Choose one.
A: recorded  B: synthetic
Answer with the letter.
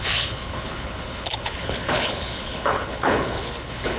B